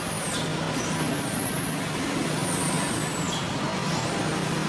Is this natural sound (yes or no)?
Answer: yes